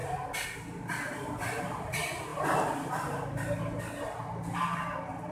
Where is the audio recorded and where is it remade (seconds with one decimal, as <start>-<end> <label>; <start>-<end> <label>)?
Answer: 0.0-5.3 recorded